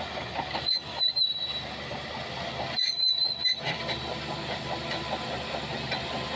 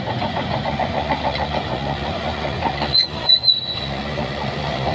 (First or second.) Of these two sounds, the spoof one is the second